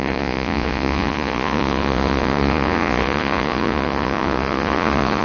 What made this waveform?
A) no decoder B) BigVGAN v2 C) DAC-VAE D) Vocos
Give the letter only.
D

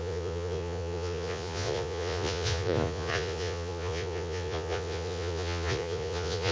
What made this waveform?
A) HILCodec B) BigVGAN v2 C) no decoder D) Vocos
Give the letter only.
D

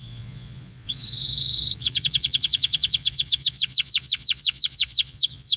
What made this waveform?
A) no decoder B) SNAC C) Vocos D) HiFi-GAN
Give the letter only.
C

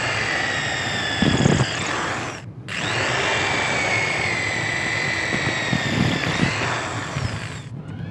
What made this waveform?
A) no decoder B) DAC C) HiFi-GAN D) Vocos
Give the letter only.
A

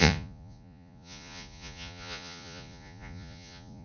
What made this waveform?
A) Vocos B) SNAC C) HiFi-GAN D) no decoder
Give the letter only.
A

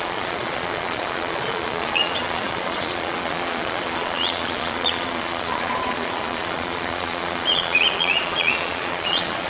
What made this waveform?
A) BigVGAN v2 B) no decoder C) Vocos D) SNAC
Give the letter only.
C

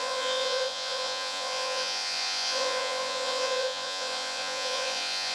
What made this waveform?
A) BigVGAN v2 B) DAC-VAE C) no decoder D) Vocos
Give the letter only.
D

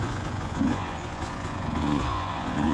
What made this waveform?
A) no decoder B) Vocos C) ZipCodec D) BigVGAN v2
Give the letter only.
B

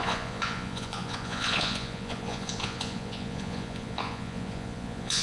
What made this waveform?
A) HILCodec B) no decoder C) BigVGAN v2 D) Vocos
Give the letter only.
D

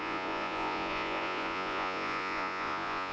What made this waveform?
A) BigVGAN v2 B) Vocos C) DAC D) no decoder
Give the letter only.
B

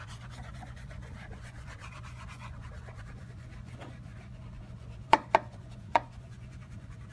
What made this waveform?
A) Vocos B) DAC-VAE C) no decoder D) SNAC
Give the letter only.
A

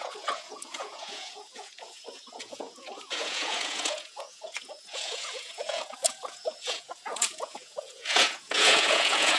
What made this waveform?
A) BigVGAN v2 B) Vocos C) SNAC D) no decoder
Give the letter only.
B